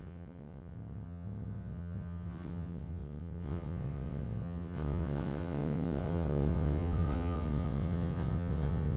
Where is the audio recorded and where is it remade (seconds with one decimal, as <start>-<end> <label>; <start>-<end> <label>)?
0.0-9.0 remade